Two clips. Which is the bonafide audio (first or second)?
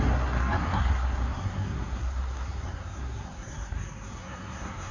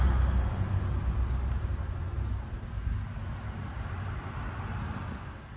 second